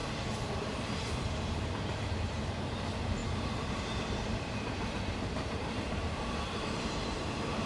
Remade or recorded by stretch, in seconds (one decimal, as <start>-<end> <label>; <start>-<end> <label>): 0.0-0.6 recorded; 0.6-7.7 remade